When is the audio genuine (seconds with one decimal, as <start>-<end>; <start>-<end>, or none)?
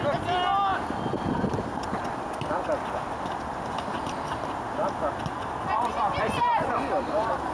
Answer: 0.0-5.3; 6.7-7.5